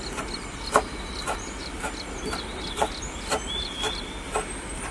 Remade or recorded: recorded